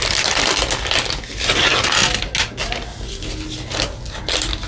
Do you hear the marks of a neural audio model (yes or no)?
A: no